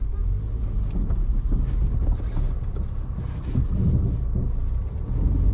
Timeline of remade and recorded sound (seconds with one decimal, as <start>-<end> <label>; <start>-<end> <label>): 0.0-5.5 recorded